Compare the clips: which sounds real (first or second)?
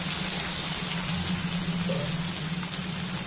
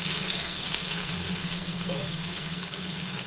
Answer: first